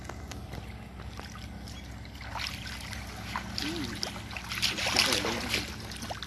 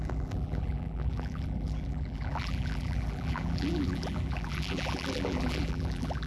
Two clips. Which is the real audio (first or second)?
first